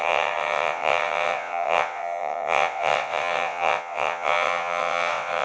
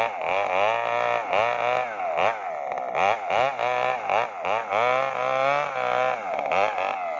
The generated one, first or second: first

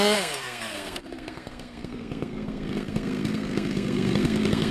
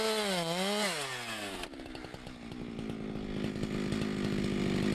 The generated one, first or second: first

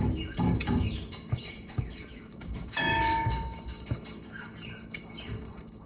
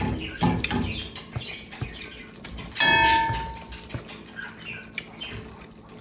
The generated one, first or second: first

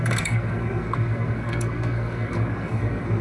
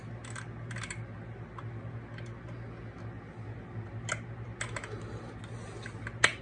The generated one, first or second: first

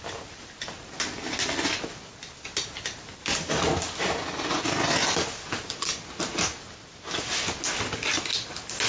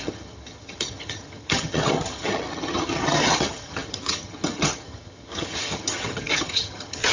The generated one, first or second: second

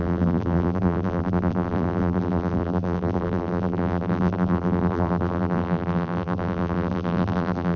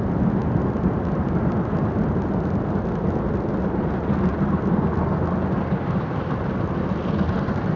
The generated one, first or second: first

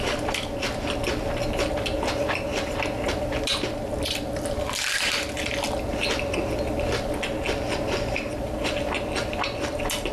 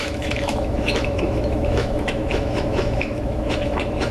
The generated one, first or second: second